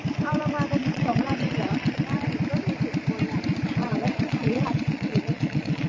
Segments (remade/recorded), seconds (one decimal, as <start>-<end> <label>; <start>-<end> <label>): 0.0-0.8 recorded; 0.8-2.3 remade; 2.3-3.8 recorded; 3.8-5.9 remade